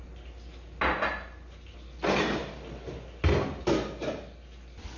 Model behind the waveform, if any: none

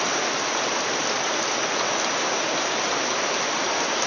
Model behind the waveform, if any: none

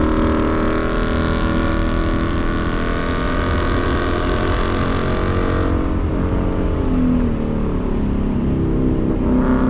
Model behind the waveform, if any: none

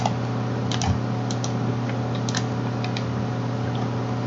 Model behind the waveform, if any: none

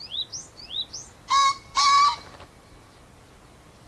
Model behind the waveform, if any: none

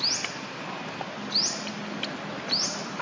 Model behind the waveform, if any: none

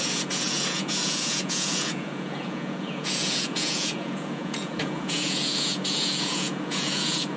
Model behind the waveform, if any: vocoder, Vocos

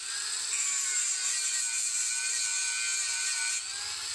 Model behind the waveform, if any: none